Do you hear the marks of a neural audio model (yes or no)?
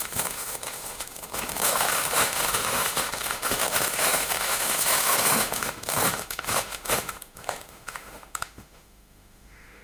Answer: yes